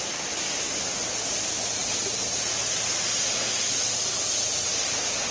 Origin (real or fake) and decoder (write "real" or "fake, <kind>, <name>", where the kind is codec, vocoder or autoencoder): real